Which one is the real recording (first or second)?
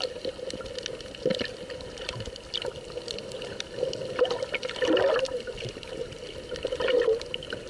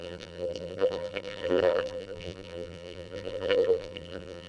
first